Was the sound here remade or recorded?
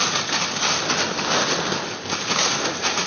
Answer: recorded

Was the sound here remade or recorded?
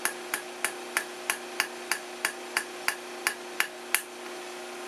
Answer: recorded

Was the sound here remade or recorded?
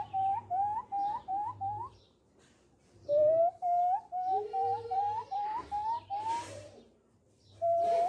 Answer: remade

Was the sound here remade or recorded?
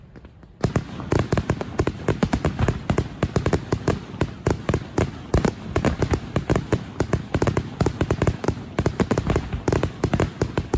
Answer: recorded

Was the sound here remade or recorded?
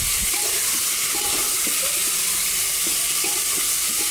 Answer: remade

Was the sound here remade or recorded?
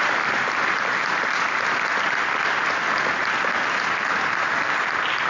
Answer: recorded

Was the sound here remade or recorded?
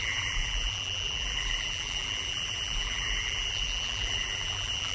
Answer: remade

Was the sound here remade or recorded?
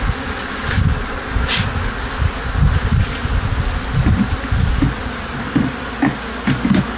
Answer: recorded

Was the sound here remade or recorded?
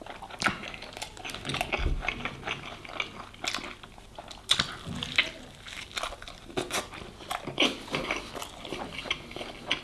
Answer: recorded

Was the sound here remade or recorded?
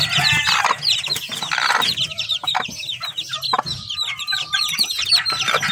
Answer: recorded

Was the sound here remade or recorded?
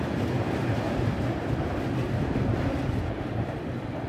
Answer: recorded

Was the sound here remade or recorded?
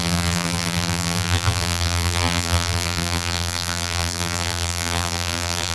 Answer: remade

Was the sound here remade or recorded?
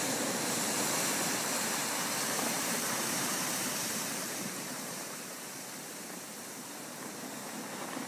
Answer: remade